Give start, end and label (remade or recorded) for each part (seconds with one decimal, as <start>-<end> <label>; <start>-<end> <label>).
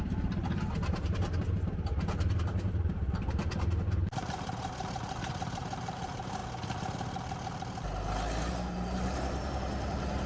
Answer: 0.0-6.4 remade; 6.4-8.5 recorded; 8.5-10.3 remade